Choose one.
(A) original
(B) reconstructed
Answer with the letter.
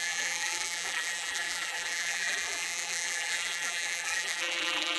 B